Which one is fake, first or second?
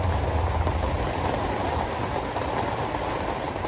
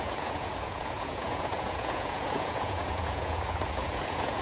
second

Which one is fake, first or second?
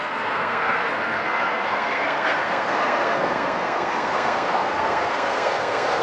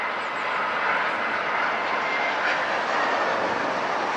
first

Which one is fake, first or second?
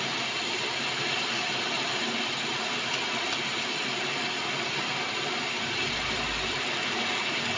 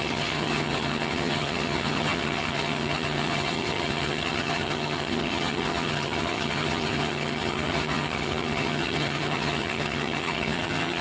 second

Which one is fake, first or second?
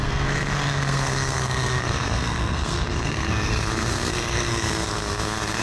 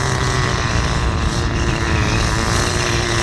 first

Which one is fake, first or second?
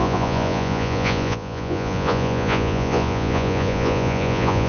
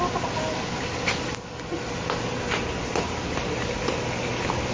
first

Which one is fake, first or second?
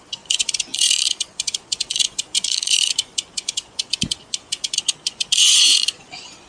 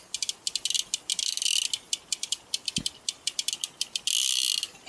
first